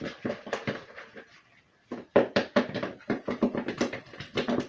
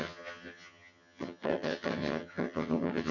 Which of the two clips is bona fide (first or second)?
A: first